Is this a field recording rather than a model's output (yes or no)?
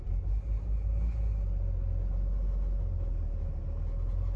yes